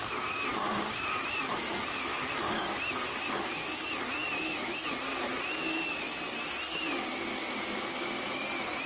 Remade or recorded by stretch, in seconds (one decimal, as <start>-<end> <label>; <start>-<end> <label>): 0.0-8.9 recorded